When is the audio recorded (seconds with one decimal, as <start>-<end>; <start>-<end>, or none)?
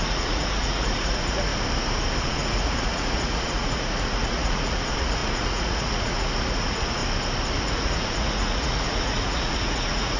1.5-2.2; 7.0-7.6